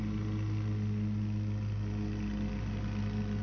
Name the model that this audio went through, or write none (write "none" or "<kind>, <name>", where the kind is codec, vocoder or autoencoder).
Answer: none